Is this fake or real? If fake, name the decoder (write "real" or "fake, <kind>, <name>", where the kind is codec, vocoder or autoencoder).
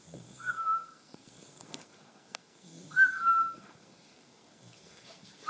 fake, codec, SNAC